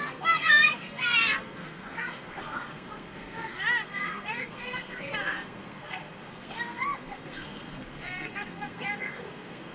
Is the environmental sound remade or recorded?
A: remade